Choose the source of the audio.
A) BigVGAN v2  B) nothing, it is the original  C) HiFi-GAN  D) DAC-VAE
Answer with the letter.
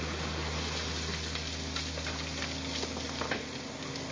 B